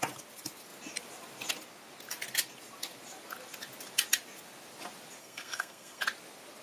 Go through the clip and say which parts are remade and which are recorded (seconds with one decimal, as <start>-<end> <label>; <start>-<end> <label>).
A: 0.0-5.2 recorded; 5.2-6.0 remade; 6.0-6.6 recorded